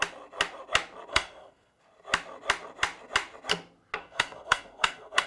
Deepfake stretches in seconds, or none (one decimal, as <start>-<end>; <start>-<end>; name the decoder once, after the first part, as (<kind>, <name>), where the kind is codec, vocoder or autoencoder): 1.1-1.8 (codec, SNAC); 4.0-5.3